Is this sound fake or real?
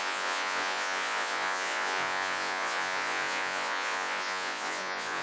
fake